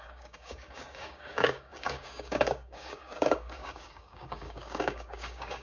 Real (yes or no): no